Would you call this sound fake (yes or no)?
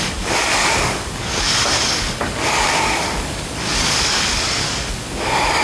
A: yes